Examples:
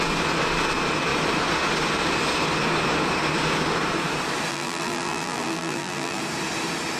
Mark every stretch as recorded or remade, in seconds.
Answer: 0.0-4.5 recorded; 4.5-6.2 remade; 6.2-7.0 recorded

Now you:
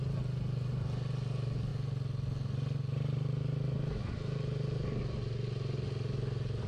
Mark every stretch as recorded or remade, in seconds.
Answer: 0.0-6.7 recorded

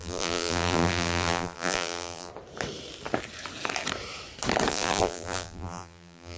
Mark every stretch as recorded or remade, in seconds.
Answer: 0.0-2.3 remade; 2.3-4.7 recorded; 4.7-6.4 remade